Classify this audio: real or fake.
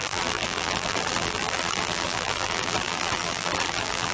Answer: fake